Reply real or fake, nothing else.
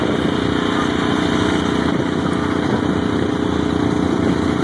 real